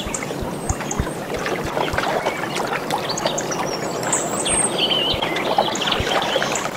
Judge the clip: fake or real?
real